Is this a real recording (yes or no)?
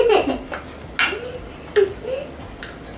yes